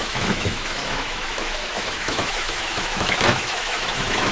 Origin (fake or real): fake